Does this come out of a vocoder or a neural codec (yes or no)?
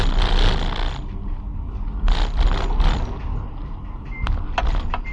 no